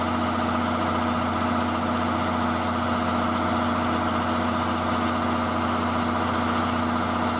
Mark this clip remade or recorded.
recorded